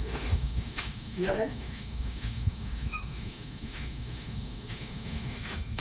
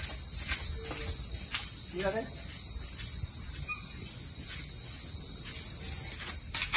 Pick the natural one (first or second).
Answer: second